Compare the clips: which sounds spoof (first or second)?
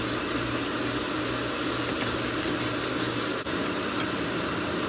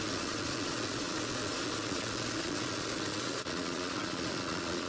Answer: second